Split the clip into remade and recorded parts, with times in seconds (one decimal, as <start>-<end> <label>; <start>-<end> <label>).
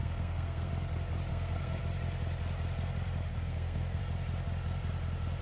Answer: 0.0-0.7 remade; 0.7-1.3 recorded; 1.3-1.8 remade; 1.8-3.3 recorded; 3.3-4.0 remade; 4.0-5.4 recorded